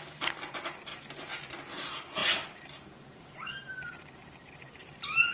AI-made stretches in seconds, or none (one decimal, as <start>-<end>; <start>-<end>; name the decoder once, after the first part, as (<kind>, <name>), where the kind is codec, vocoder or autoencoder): 0.0-0.9 (vocoder, BigVGAN v2); 1.7-5.3